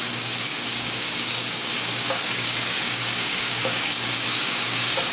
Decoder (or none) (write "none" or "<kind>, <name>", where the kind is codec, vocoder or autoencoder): codec, DAC